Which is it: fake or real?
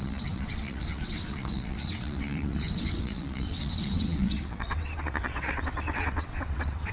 fake